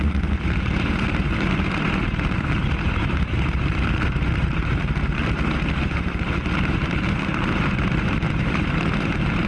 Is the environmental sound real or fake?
fake